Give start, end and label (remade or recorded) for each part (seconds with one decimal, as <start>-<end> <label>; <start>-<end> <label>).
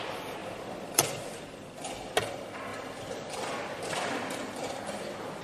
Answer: 0.0-0.4 recorded; 0.4-1.4 remade; 1.4-5.4 recorded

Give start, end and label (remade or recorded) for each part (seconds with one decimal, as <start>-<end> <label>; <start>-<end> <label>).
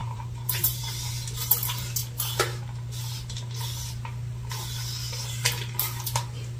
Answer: 0.0-0.8 remade; 0.8-6.6 recorded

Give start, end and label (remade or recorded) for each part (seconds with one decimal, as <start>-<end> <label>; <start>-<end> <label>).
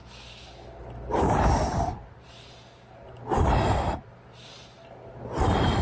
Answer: 0.0-5.8 recorded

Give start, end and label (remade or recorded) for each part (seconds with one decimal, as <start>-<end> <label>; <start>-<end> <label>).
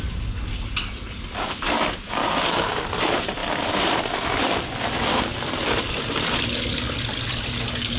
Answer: 0.0-2.2 recorded; 2.2-2.8 remade; 2.8-8.0 recorded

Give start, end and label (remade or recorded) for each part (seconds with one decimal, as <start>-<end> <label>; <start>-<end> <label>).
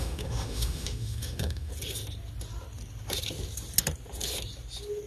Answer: 0.0-1.7 remade; 1.7-5.1 recorded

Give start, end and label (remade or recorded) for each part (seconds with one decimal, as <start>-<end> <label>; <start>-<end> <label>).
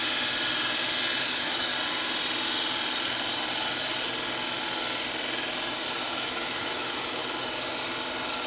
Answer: 0.0-1.2 recorded; 1.2-1.7 remade; 1.7-6.1 recorded; 6.1-7.2 remade; 7.2-8.5 recorded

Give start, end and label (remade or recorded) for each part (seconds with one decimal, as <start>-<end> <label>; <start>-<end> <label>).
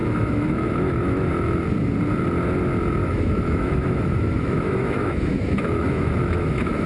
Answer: 0.0-1.3 remade; 1.3-3.0 recorded; 3.0-6.9 remade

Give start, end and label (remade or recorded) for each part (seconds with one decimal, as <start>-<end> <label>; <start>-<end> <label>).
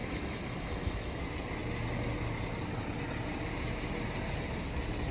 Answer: 0.0-1.2 remade; 1.2-5.1 recorded